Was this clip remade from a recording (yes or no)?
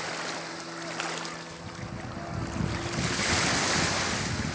no